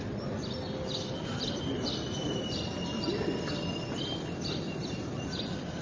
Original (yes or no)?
yes